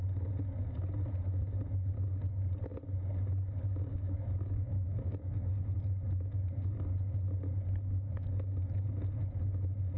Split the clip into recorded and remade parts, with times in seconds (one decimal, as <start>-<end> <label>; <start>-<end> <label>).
0.0-3.9 recorded; 3.9-5.5 remade; 5.5-10.0 recorded